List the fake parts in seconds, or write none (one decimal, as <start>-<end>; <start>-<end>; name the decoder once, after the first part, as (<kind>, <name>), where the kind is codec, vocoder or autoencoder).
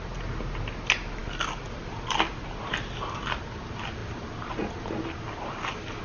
none